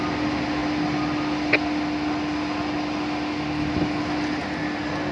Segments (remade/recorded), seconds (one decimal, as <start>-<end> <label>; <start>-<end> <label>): 0.0-5.1 recorded